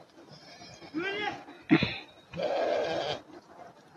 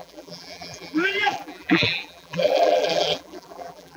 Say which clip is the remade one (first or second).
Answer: second